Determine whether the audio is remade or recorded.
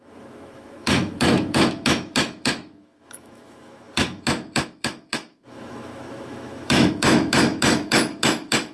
remade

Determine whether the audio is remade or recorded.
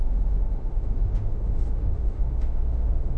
remade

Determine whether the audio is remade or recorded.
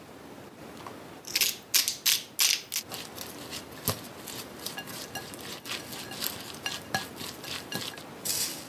recorded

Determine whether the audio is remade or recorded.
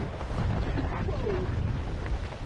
recorded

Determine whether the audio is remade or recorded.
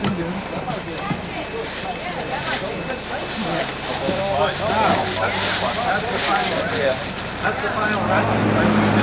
recorded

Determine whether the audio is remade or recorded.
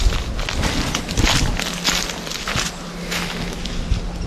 recorded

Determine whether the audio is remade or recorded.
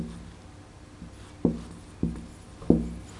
recorded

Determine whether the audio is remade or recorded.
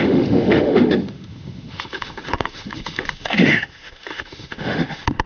remade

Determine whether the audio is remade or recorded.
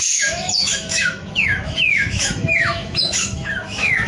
remade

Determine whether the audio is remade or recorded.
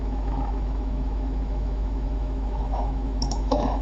remade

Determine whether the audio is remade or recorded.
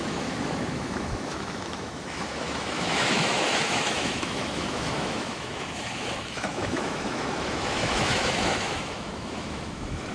remade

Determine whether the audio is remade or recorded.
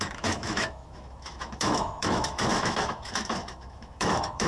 remade